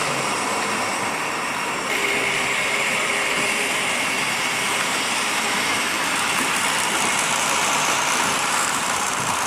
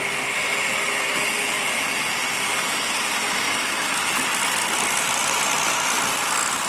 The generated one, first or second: first